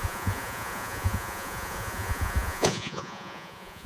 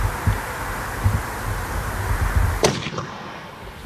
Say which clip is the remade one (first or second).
first